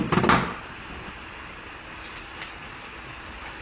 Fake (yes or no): no